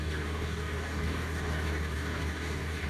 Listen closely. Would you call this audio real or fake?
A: fake